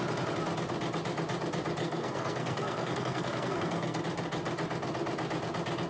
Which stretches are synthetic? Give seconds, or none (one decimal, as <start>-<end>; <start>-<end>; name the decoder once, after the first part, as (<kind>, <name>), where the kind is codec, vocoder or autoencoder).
1.8-4.0 (codec, SNAC)